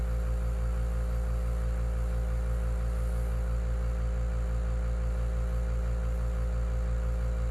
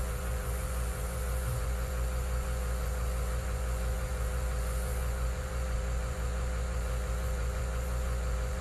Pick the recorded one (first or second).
first